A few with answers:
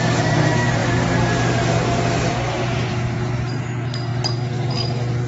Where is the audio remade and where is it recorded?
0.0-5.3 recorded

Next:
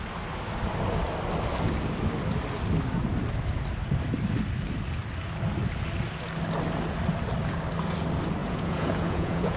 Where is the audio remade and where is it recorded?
0.0-8.4 recorded; 8.4-9.6 remade

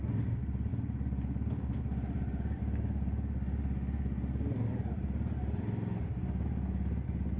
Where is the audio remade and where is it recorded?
0.0-7.4 recorded

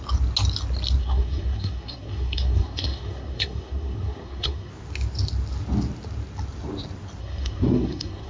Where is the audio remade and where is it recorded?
0.0-1.0 recorded; 1.0-4.7 remade; 4.7-7.2 recorded; 7.2-8.3 remade

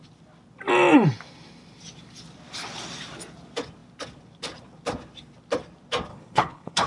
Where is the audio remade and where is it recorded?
0.0-6.1 recorded; 6.1-6.9 remade

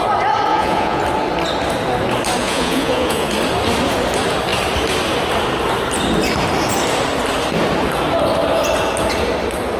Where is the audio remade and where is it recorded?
0.0-0.5 recorded; 0.5-1.0 remade; 1.0-2.4 recorded; 2.4-3.3 remade; 3.3-9.8 recorded

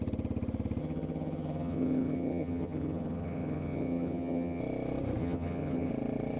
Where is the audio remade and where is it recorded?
0.0-0.8 recorded; 0.8-4.6 remade; 4.6-5.2 recorded; 5.2-5.9 remade; 5.9-6.4 recorded

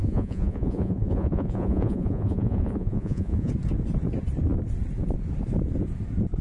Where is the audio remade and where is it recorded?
0.0-3.5 remade; 3.5-6.4 recorded